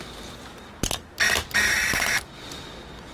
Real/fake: real